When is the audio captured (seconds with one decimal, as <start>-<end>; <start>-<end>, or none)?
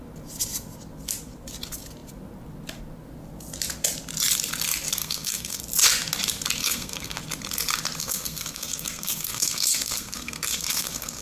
0.0-5.0; 5.6-6.6; 7.2-8.0